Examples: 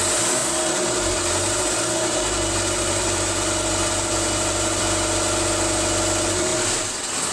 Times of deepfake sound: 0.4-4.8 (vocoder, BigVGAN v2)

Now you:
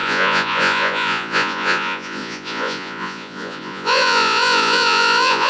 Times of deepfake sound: 0.0-5.5 (vocoder, Vocos)

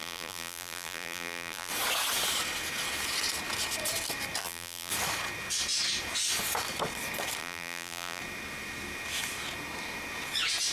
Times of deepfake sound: 0.0-1.7 (vocoder, BigVGAN v2); 4.4-4.9; 7.4-8.2

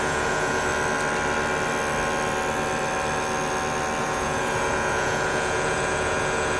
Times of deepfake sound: 0.0-0.7 (vocoder, Vocos); 4.0-6.6

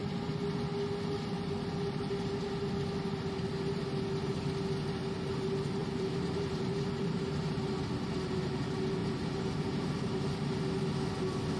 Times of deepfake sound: 5.8-7.7 (vocoder, BigVGAN v2); 9.0-10.6

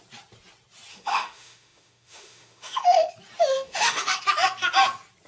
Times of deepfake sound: 0.9-3.1 (autoencoder, DAC-VAE); 3.5-4.2

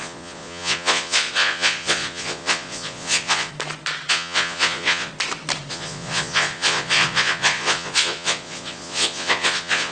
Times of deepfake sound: 0.0-3.5 (vocoder, Vocos); 4.1-5.1; 5.7-9.9